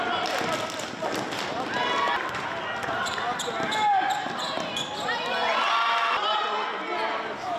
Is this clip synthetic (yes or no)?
no